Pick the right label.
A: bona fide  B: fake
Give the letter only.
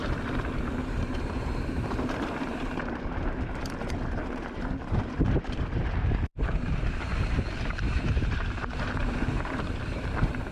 B